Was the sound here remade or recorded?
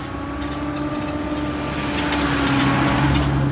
recorded